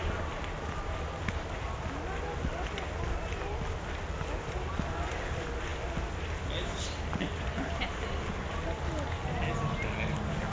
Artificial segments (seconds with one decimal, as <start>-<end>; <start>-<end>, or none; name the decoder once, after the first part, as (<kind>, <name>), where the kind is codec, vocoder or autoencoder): none